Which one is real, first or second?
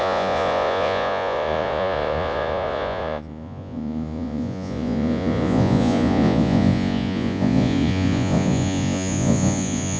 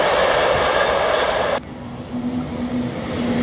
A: second